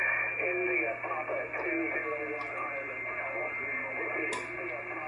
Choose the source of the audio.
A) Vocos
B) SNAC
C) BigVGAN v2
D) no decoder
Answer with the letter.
D